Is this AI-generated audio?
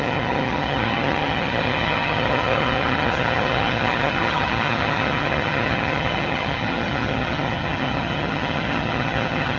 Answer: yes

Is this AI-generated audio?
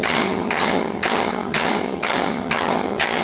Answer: yes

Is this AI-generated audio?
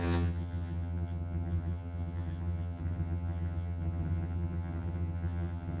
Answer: yes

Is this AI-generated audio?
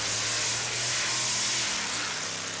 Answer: no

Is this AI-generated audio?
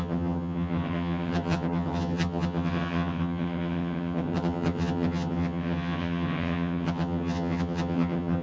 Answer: yes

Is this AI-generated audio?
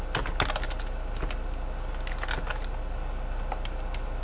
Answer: no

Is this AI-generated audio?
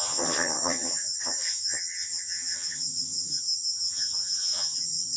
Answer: yes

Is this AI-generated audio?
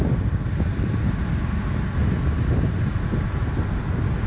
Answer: no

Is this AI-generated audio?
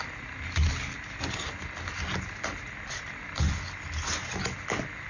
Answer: no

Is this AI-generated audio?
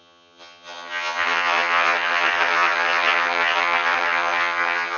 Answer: yes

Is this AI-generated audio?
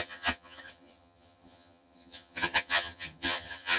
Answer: yes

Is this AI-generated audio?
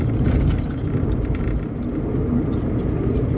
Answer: no